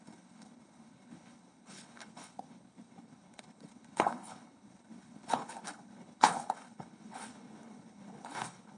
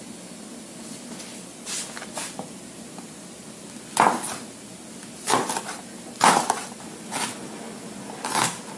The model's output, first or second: first